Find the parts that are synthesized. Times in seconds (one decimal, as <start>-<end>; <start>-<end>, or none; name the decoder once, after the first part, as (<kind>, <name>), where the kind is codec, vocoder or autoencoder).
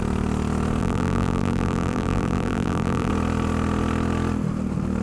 0.8-3.1 (vocoder, BigVGAN v2)